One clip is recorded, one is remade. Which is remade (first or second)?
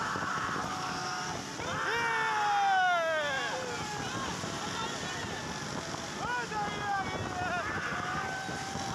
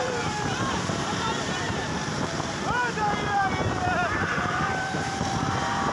second